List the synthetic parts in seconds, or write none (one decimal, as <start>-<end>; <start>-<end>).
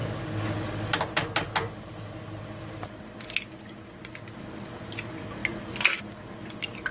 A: none